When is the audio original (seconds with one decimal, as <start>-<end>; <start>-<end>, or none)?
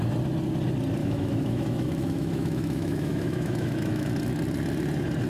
0.0-1.0; 4.1-5.3